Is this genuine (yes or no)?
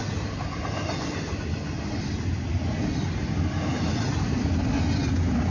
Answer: yes